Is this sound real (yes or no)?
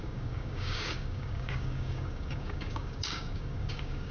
no